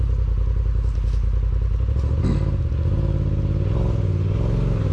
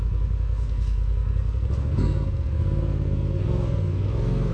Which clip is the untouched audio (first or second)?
first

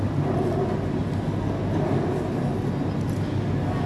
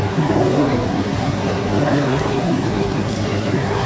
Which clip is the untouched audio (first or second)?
first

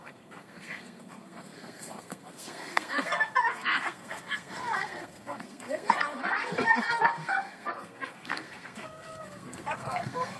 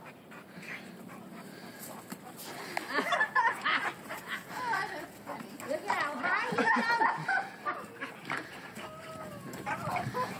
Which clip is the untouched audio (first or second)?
second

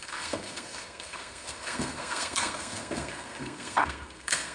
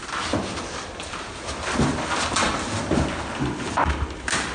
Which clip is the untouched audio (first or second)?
second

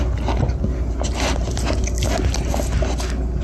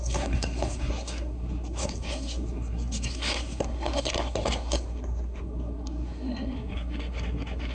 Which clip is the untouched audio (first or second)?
first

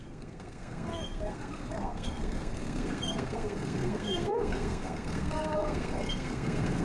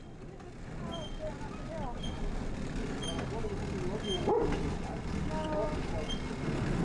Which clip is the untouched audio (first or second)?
second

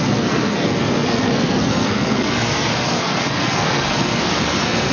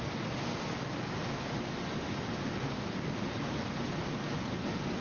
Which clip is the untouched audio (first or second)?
second